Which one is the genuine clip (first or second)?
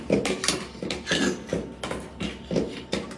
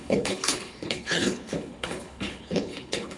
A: first